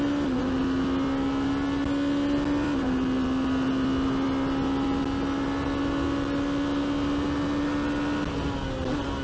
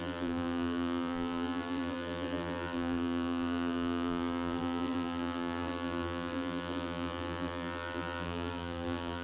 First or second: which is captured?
first